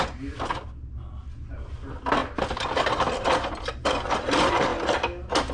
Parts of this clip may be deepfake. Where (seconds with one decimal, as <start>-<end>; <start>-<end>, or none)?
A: none